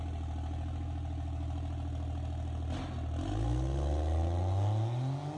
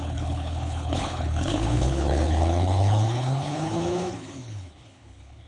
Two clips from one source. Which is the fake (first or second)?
second